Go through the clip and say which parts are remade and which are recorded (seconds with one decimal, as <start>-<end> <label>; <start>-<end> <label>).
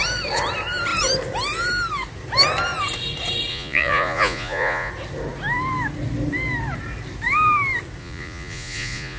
0.0-3.5 recorded; 3.5-4.9 remade; 4.9-8.0 recorded; 8.0-9.2 remade